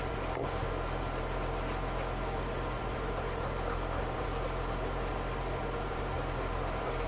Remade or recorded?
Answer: remade